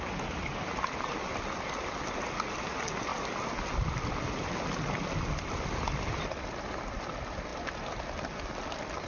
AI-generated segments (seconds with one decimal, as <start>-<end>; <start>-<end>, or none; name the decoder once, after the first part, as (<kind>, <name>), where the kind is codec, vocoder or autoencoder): none